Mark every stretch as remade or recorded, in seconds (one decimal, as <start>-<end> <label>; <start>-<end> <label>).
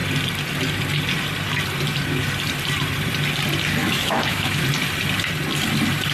0.0-3.8 recorded; 3.8-4.6 remade; 4.6-6.1 recorded